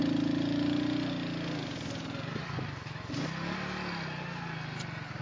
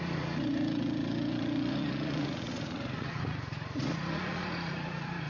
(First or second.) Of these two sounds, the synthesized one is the second